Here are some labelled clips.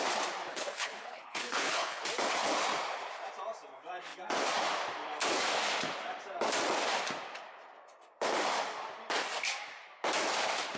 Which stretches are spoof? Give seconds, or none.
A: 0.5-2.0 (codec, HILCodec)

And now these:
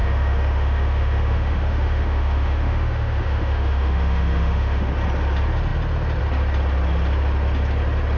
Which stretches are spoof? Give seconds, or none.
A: 0.0-4.9 (autoencoder, DAC-VAE)

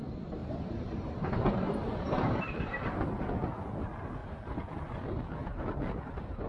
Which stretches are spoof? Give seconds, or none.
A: 0.4-3.2 (vocoder, BigVGAN v2); 4.2-4.8; 5.4-6.5

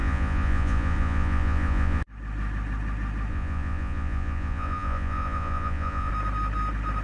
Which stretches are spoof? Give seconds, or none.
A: 0.0-2.0 (vocoder, Vocos); 3.3-6.1

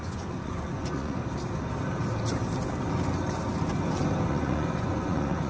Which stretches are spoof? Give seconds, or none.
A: 0.0-1.2 (vocoder, Vocos); 4.3-5.5